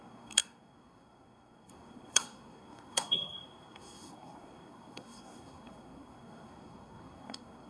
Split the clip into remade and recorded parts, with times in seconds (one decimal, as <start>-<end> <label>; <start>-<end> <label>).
0.0-7.7 remade